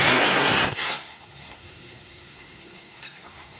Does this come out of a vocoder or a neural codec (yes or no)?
yes